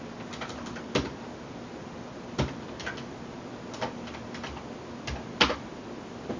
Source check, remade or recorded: recorded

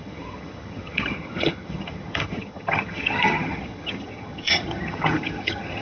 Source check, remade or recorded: remade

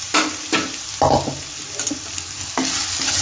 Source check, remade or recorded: recorded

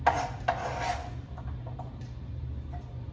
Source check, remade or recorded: recorded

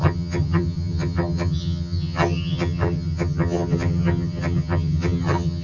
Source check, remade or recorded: remade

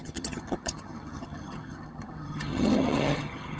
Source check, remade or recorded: remade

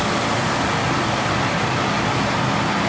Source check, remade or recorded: recorded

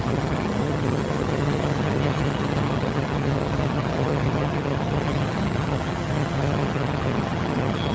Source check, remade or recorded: remade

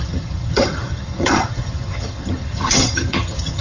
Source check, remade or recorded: remade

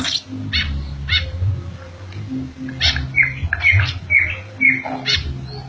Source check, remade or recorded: recorded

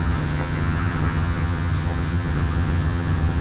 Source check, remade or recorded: remade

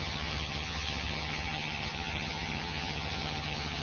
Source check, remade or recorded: remade